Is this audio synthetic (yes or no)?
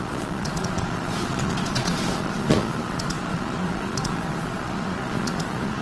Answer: yes